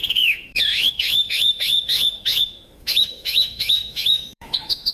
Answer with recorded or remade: remade